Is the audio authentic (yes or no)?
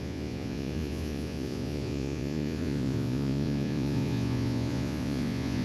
no